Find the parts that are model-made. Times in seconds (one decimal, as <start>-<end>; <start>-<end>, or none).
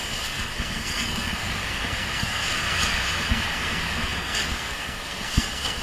0.0-5.8